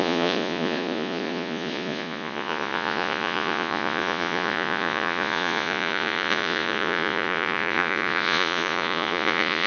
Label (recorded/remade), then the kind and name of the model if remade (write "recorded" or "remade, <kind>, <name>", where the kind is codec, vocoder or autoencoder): remade, vocoder, Vocos